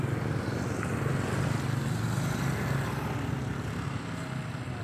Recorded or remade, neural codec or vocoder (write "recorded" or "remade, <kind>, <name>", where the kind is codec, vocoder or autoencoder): recorded